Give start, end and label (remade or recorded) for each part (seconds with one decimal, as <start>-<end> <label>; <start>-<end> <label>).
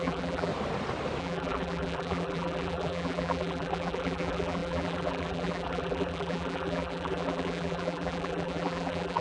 0.0-0.5 remade; 0.5-1.2 recorded; 1.2-9.2 remade